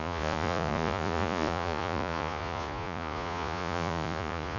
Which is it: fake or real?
fake